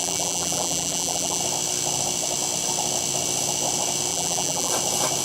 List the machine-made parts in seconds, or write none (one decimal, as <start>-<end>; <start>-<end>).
0.0-1.4; 4.1-4.7